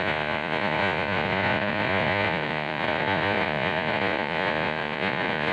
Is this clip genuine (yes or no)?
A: no